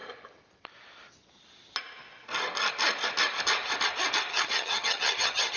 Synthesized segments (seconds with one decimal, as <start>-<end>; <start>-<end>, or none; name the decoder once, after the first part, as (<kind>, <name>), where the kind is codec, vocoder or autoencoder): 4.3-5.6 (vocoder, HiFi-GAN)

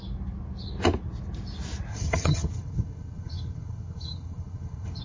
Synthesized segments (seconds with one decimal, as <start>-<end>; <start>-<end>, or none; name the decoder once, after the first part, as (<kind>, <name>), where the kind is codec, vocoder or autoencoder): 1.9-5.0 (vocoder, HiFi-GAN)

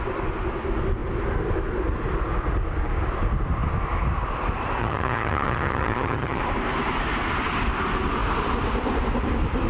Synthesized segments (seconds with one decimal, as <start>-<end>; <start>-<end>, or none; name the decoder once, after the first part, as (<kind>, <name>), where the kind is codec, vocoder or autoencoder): 4.8-6.4 (vocoder, HiFi-GAN)

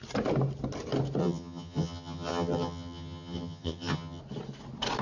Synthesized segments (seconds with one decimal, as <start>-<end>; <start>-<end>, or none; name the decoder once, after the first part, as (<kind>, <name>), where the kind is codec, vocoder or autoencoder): 1.2-4.2 (vocoder, HiFi-GAN)